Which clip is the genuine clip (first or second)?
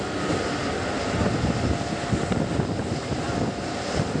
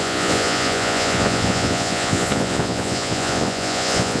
first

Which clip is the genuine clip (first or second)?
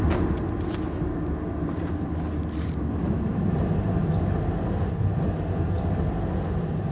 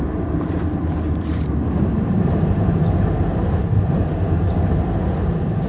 first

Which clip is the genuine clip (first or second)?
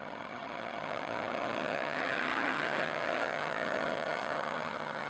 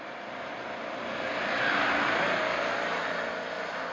second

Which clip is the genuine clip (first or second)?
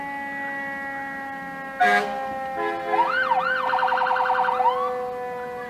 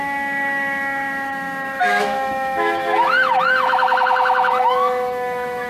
first